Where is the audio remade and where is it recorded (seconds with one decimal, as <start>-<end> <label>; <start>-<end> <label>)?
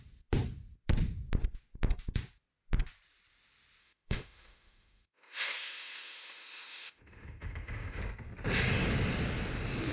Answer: 0.0-3.8 recorded; 3.8-8.0 remade; 8.0-9.9 recorded